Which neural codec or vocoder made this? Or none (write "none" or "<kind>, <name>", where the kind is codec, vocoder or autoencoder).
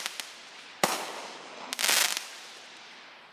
none